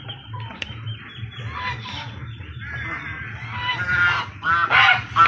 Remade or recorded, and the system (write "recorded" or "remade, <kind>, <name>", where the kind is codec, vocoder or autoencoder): recorded